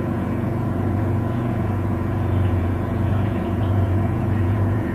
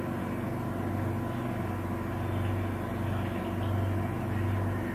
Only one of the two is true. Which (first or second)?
second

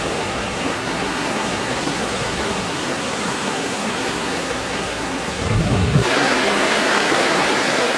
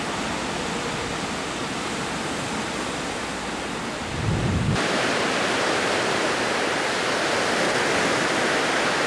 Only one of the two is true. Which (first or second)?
second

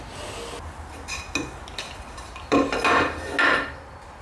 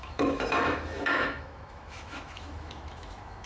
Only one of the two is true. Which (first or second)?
first